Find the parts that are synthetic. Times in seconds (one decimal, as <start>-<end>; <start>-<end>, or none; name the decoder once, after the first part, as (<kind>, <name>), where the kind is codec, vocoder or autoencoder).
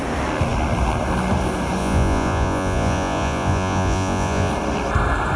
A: 1.8-4.5 (vocoder, Vocos)